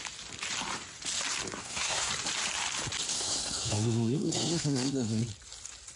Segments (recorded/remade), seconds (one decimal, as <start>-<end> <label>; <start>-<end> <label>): 0.0-1.6 recorded; 1.6-2.1 remade; 2.1-3.1 recorded; 3.1-5.2 remade; 5.2-6.0 recorded